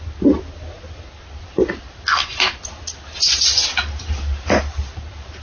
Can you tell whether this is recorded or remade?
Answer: recorded